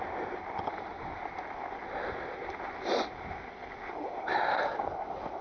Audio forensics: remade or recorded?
recorded